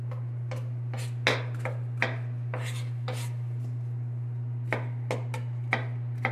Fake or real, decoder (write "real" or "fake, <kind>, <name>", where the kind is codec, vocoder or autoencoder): real